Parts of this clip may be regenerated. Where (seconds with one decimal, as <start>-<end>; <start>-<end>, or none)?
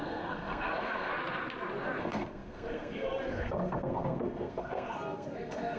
0.0-1.1; 2.0-5.8